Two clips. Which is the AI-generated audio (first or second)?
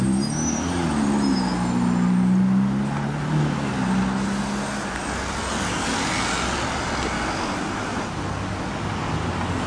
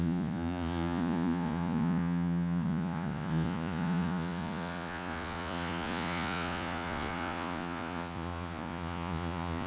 second